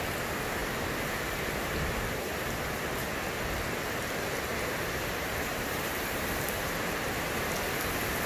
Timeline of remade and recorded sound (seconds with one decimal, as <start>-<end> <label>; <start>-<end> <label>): 0.0-4.5 recorded; 4.5-7.2 remade; 7.2-8.3 recorded